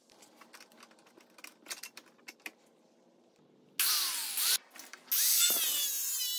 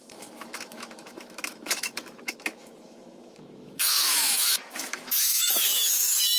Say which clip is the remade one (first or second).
second